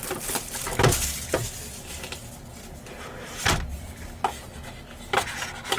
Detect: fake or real real